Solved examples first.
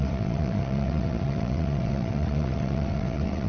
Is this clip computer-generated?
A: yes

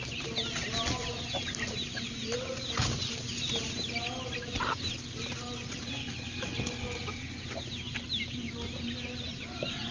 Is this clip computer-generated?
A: no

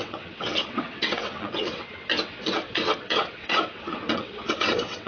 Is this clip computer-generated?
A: yes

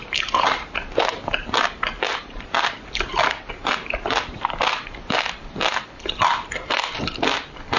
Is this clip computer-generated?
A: no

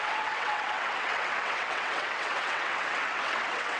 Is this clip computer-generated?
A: yes